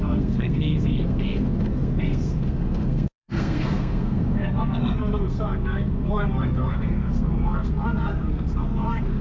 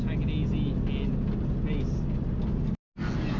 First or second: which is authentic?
second